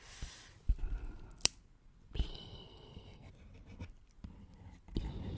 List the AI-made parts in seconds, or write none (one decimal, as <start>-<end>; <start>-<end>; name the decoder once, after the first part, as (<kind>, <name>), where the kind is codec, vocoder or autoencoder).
2.3-3.3 (codec, SNAC)